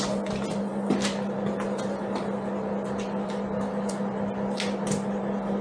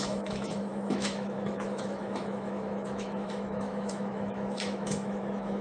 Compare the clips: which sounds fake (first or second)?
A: second